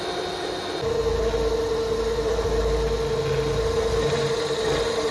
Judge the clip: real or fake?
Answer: real